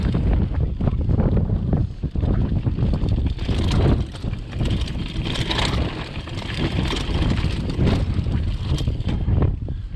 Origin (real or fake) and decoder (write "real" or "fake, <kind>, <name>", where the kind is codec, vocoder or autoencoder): real